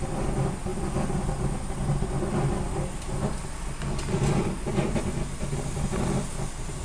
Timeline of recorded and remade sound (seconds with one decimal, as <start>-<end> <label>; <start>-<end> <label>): 0.0-6.8 recorded